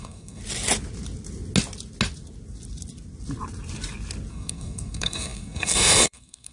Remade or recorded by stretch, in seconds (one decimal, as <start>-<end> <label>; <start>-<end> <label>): 0.0-0.4 remade; 0.4-4.3 recorded; 4.3-6.5 remade